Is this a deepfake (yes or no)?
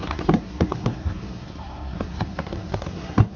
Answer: yes